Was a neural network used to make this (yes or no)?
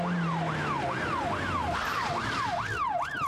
no